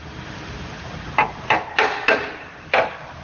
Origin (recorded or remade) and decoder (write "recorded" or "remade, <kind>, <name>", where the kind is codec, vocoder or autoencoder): recorded